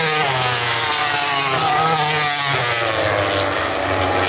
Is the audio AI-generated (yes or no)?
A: no